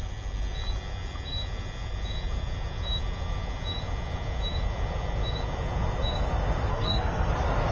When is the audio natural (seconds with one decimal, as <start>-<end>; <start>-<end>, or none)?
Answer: 0.0-6.7; 7.3-7.7